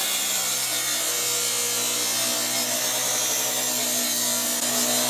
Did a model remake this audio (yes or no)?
no